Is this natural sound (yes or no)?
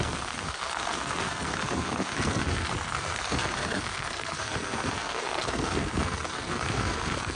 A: no